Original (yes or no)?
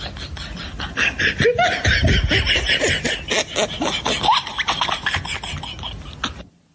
yes